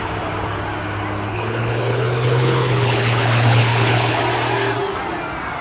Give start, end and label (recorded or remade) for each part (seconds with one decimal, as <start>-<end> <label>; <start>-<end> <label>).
0.0-1.3 recorded; 1.3-4.2 remade; 4.2-5.6 recorded